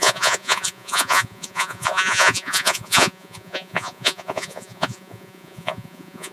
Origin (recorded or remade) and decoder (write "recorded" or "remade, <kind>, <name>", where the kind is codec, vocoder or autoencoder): remade, vocoder, Vocos